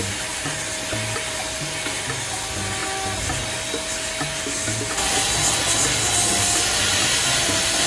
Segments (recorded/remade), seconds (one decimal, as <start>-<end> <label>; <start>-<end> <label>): 0.0-7.9 recorded